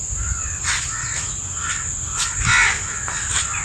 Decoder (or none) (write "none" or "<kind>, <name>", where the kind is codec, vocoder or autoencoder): none